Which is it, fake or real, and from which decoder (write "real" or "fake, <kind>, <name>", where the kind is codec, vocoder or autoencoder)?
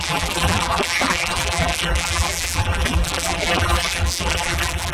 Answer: fake, vocoder, BigVGAN v2